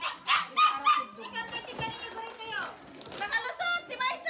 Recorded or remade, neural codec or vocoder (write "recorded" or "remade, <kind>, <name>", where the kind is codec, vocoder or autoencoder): recorded